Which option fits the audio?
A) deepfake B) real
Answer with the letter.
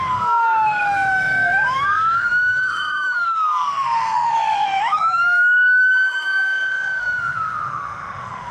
A